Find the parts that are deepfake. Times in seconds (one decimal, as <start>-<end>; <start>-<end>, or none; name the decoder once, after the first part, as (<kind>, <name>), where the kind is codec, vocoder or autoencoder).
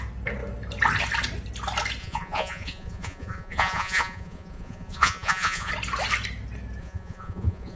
2.0-5.7 (vocoder, Vocos); 6.8-7.8